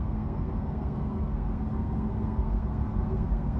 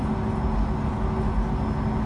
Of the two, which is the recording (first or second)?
second